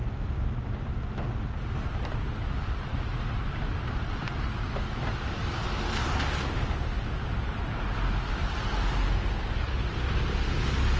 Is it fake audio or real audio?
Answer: real